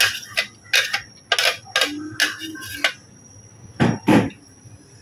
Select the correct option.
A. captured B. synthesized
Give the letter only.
A